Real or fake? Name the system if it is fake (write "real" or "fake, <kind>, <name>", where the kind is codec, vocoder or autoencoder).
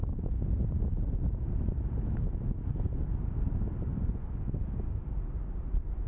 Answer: real